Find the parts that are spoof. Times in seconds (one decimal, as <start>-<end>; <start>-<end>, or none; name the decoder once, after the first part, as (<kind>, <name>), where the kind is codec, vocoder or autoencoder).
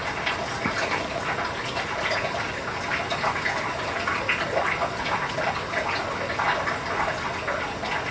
none